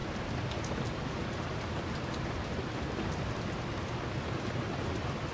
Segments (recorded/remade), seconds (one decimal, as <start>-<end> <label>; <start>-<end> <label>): 0.0-5.3 recorded